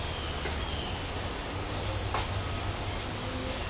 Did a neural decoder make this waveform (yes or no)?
no